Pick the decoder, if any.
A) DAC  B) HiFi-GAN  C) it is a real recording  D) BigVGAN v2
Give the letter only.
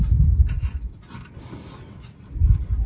C